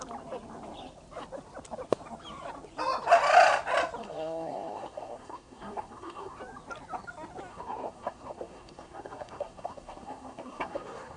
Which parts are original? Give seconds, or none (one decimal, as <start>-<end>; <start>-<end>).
0.0-4.0; 6.4-7.5